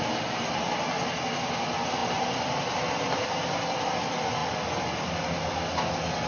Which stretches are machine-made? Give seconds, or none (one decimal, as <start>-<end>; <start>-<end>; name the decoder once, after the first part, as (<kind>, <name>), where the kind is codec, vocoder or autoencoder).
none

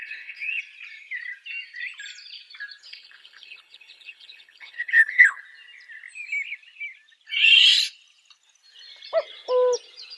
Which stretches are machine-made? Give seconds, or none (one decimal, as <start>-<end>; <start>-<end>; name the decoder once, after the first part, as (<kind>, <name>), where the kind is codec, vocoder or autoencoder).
0.0-0.6 (codec, HILCodec); 2.8-5.4

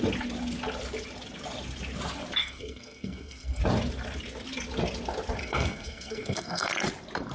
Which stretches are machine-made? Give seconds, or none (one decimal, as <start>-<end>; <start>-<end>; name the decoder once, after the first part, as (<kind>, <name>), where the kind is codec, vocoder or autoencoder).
2.4-3.6 (codec, SNAC); 5.4-6.7

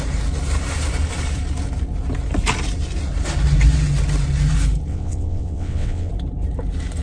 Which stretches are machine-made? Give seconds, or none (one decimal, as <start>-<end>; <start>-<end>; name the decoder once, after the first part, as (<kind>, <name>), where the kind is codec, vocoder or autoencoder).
4.9-6.1 (vocoder, WaveNeXt)

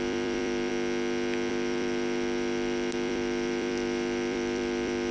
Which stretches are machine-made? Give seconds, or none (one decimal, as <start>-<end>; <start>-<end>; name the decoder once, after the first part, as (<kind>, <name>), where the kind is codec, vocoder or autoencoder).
0.0-0.7 (vocoder, BigVGAN v2); 1.5-5.1

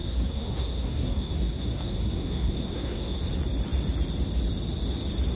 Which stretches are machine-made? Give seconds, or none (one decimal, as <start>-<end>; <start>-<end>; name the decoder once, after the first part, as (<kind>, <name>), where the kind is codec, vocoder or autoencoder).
0.0-3.2 (codec, SNAC)

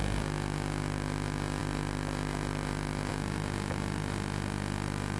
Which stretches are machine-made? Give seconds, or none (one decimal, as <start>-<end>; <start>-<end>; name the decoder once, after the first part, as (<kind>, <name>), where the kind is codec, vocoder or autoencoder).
none